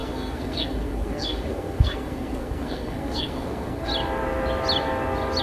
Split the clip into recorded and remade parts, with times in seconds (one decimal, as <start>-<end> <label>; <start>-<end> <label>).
0.0-3.9 remade; 3.9-5.4 recorded